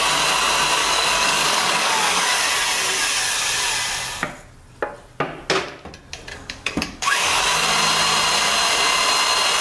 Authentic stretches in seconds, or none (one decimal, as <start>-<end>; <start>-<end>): 0.0-0.8; 2.4-6.3; 7.4-9.6